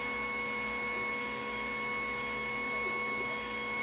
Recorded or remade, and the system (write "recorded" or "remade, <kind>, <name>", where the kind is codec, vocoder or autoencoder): remade, autoencoder, DAC-VAE